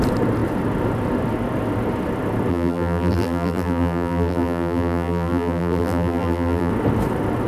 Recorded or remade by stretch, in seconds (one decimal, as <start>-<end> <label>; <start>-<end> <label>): 0.0-2.5 recorded; 2.5-6.7 remade; 6.7-7.5 recorded